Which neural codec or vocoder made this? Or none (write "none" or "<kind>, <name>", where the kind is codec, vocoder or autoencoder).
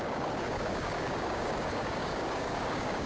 codec, DAC